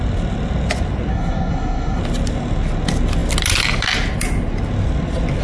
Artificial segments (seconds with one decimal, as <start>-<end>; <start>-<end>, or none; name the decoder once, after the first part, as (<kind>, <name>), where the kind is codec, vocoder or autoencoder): 1.1-2.0 (codec, SNAC)